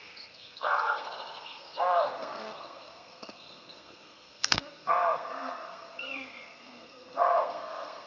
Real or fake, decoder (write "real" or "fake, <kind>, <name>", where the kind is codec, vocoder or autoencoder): fake, codec, SNAC